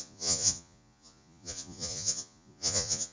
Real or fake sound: fake